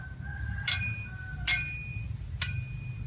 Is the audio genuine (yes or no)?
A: yes